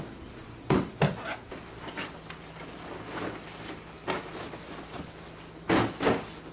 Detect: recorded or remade recorded